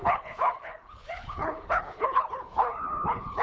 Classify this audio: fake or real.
fake